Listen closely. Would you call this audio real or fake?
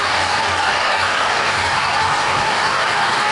fake